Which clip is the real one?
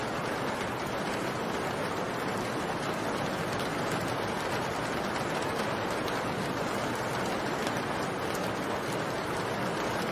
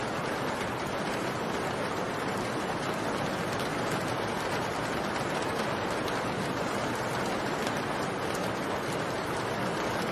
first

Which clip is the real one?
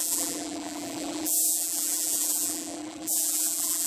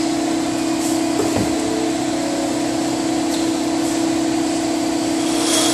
second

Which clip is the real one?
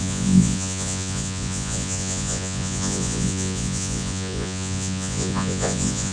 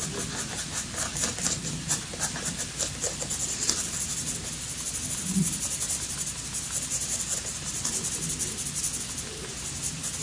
second